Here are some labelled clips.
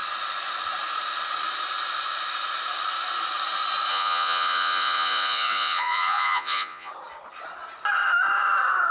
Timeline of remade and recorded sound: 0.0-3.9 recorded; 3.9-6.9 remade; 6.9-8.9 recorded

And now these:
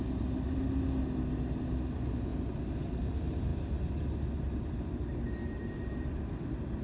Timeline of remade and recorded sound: 0.0-6.8 recorded

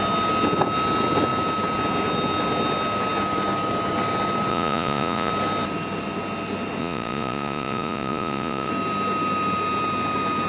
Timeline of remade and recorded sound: 0.0-4.5 recorded; 4.5-5.3 remade; 5.3-6.8 recorded; 6.8-8.7 remade; 8.7-10.5 recorded

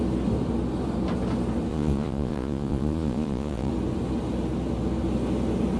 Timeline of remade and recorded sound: 0.0-1.7 recorded; 1.7-3.7 remade; 3.7-5.8 recorded

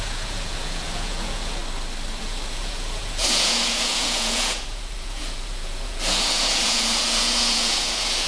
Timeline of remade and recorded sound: 0.0-1.6 remade; 1.6-2.2 recorded; 2.2-8.3 remade

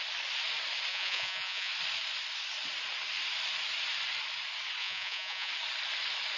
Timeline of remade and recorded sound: 0.0-0.9 recorded; 0.9-1.7 remade; 1.7-4.8 recorded; 4.8-5.5 remade; 5.5-6.4 recorded

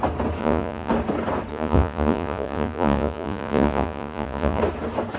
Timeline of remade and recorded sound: 0.0-0.4 recorded; 0.4-0.9 remade; 0.9-1.5 recorded; 1.5-4.6 remade; 4.6-5.2 recorded